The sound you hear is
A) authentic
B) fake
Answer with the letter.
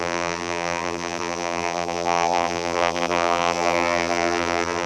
B